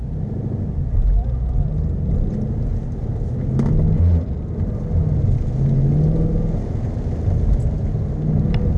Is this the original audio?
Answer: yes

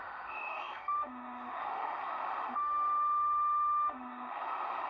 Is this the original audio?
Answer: no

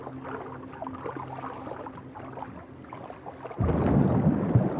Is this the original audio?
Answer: yes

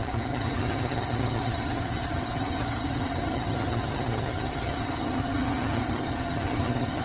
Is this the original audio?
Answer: no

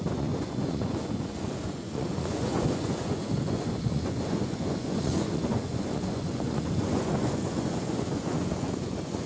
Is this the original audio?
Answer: no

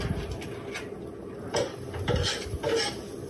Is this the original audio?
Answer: yes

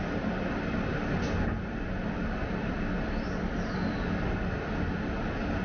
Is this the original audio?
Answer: yes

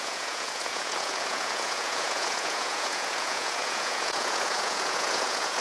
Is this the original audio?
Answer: no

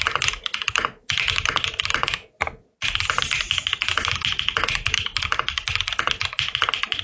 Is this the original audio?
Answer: yes